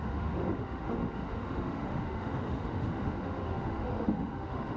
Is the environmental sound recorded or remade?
remade